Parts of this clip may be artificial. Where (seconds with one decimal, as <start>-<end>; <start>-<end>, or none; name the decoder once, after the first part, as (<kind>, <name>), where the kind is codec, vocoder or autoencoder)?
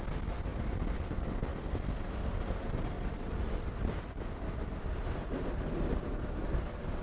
none